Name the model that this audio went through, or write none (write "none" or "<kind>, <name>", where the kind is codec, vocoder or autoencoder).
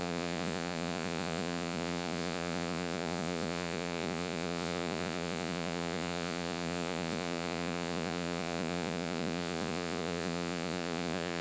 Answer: vocoder, Vocos